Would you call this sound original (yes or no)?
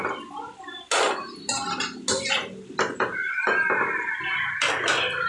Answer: yes